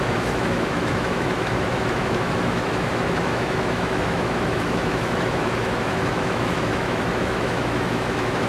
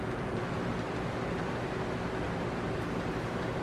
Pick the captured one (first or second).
second